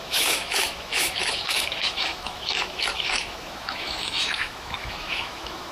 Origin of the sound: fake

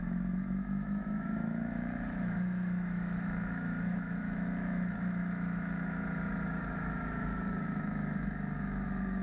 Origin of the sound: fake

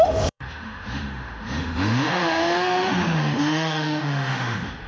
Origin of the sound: fake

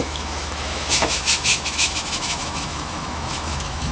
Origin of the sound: fake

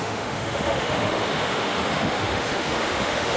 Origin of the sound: fake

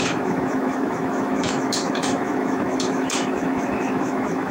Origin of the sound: fake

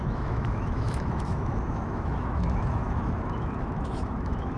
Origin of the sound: fake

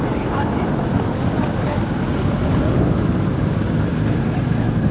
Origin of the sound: real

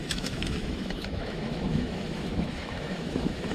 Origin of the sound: fake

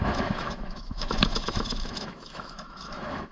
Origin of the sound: fake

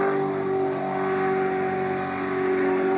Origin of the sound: real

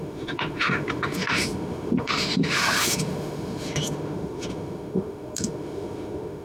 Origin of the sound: fake